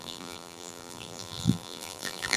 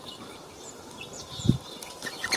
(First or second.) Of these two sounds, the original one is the second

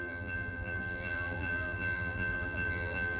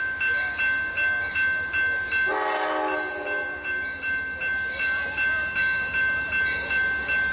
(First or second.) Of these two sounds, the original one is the second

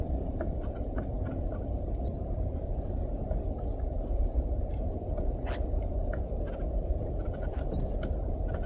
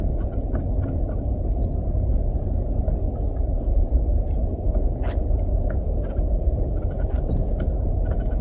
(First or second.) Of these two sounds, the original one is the second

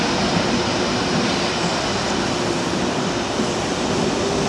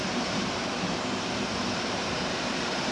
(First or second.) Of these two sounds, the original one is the first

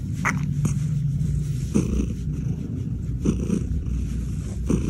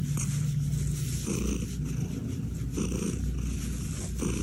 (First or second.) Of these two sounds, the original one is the second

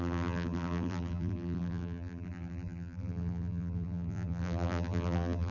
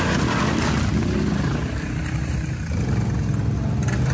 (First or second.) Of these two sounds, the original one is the second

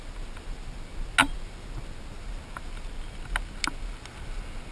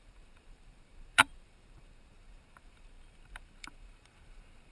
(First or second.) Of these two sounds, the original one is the first